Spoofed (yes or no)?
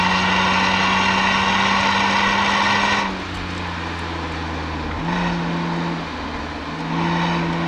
no